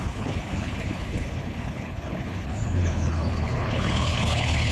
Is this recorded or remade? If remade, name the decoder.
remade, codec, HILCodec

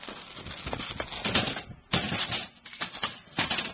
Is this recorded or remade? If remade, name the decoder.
recorded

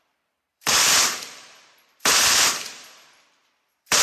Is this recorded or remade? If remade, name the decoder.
remade, vocoder, BigVGAN v2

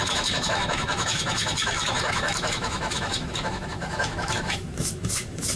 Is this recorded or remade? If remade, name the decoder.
remade, autoencoder, DAC-VAE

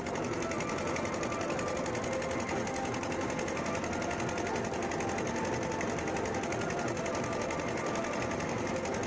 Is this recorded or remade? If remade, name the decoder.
recorded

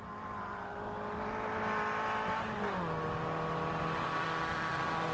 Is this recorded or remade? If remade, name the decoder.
recorded